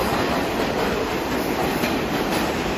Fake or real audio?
real